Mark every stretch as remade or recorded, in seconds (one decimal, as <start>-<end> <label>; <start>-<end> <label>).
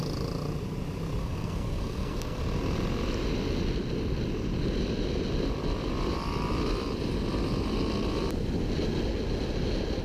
0.0-1.2 recorded; 1.2-2.4 remade; 2.4-10.0 recorded